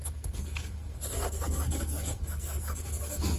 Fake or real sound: fake